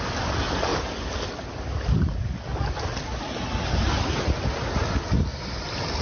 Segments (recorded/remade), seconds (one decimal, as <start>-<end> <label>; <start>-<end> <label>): 0.0-5.3 recorded; 5.3-6.0 remade